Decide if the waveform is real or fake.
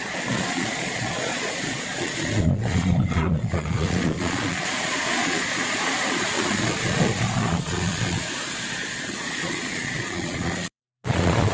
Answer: fake